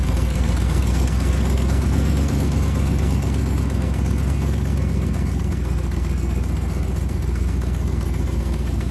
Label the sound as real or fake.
fake